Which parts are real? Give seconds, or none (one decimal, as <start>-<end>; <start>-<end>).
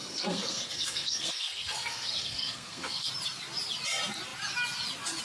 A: 3.1-5.2